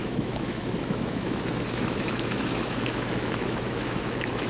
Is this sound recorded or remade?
remade